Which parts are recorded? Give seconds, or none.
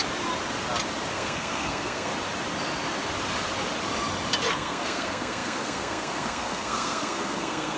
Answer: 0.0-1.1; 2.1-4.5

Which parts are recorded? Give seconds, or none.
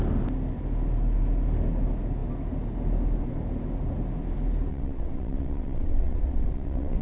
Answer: 0.0-4.7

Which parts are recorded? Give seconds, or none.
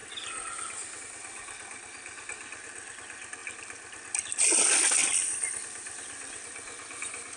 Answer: 0.0-7.4